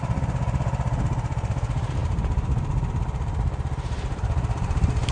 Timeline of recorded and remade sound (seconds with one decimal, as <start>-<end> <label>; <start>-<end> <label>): 0.0-5.1 remade